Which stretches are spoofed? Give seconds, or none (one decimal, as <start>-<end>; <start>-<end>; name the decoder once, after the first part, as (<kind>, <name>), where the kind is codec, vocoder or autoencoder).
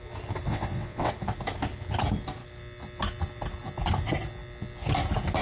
0.5-1.1 (vocoder, WaveNeXt)